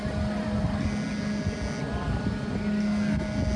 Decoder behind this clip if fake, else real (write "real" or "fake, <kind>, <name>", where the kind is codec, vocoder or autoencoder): real